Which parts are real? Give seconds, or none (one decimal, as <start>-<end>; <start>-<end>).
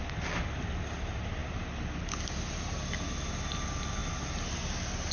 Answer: 0.0-5.1